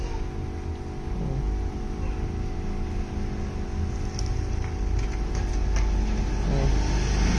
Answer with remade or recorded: recorded